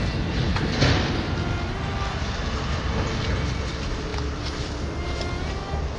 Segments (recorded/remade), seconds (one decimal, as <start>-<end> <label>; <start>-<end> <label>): 0.0-6.0 recorded